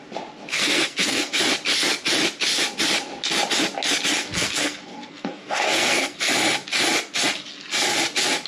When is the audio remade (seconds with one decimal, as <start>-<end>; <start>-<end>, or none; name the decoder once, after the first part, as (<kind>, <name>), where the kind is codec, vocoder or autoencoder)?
0.5-1.4 (codec, SNAC); 4.2-6.3